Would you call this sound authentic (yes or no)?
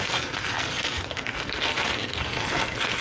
no